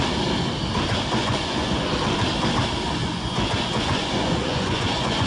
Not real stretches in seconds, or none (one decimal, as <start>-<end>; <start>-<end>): 1.2-1.9; 3.0-5.3